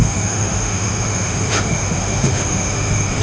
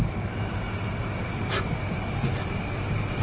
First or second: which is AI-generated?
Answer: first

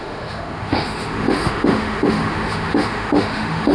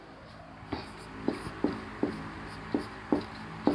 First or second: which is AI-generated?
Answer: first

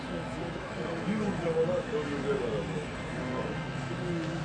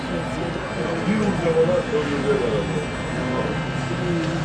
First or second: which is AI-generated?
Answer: first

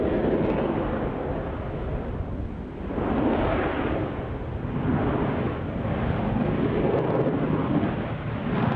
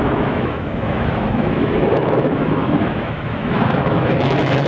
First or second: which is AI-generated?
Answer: second